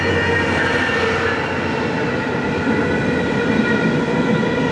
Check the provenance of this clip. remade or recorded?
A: recorded